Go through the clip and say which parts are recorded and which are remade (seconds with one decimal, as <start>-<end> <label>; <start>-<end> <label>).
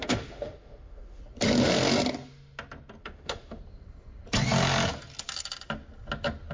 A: 0.0-1.2 remade; 1.2-3.0 recorded; 3.0-3.6 remade; 3.6-6.5 recorded